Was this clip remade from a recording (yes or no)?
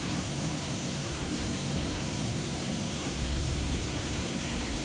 yes